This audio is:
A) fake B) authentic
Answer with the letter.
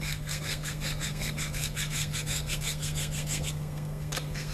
A